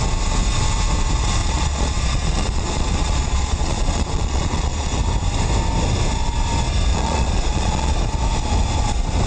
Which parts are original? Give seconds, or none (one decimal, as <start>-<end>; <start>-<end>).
0.0-1.4; 5.0-6.9; 7.9-9.3